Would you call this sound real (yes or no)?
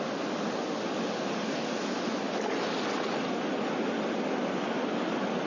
yes